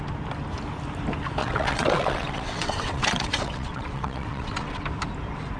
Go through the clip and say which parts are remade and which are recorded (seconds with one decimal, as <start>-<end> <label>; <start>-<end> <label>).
0.0-1.4 recorded; 1.4-4.8 remade; 4.8-5.6 recorded